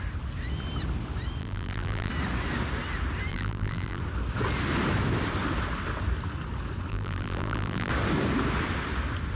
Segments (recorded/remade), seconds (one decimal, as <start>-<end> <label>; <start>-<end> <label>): 0.0-1.4 recorded; 1.4-2.1 remade; 2.1-3.3 recorded; 3.3-4.0 remade; 4.0-6.9 recorded; 6.9-7.9 remade; 7.9-9.4 recorded